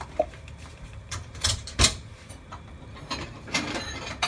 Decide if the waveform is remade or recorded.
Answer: remade